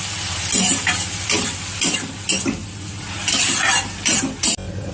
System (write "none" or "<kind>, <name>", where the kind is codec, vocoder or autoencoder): none